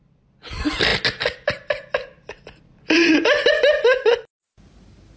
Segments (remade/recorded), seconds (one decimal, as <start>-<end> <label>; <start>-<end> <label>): 0.0-5.2 recorded